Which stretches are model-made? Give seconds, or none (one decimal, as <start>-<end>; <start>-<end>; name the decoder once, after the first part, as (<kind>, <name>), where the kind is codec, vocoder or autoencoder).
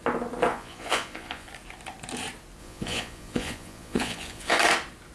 0.5-1.5 (vocoder, Vocos); 2.6-4.6